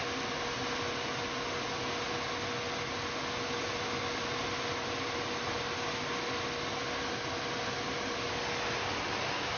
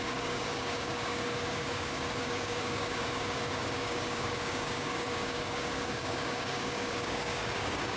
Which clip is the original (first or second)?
first